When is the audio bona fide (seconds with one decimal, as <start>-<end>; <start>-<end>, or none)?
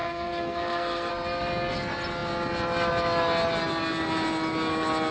1.1-5.1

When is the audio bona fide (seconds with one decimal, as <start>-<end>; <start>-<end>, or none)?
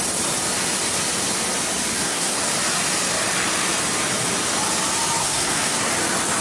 0.0-1.9; 2.4-5.2; 5.9-6.4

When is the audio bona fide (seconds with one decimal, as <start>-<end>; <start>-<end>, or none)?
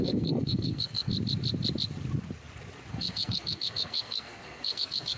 1.1-2.9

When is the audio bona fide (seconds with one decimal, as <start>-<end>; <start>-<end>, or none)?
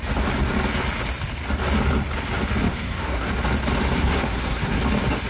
0.0-2.7; 3.3-4.0; 4.8-5.3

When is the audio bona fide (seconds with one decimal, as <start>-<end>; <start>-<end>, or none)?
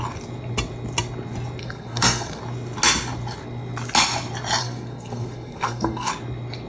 0.0-1.6; 2.4-4.6; 6.1-6.7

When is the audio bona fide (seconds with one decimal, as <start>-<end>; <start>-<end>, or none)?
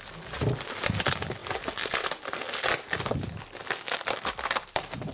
0.0-5.1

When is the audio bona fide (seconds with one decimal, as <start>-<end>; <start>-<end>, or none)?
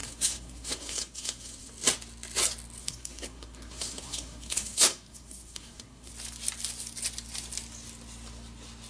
1.7-2.8; 6.1-8.9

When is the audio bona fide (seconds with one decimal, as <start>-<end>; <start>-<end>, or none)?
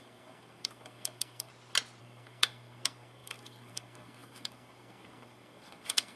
1.5-2.0